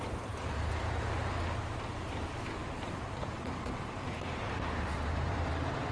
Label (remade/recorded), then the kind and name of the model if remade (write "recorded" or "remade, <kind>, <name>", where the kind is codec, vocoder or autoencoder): remade, vocoder, BigVGAN v2